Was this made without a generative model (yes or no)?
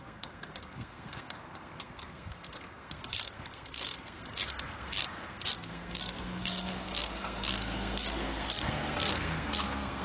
no